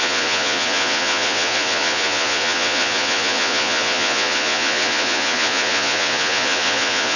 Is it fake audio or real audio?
fake